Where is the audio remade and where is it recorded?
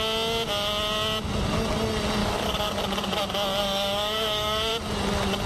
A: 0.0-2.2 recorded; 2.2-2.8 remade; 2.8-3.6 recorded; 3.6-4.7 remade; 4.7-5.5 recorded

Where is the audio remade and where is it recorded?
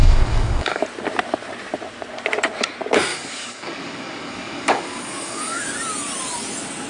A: 0.0-0.8 remade; 0.8-3.1 recorded; 3.1-5.6 remade; 5.6-6.9 recorded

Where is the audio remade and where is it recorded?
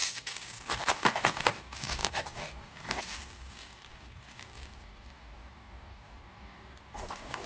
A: 0.0-7.5 remade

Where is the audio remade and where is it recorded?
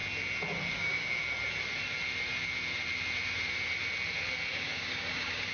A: 0.0-0.7 recorded; 0.7-1.2 remade; 1.2-4.5 recorded; 4.5-5.5 remade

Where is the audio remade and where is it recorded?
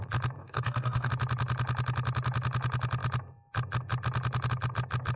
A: 0.0-0.4 recorded; 0.4-1.1 remade; 1.1-5.2 recorded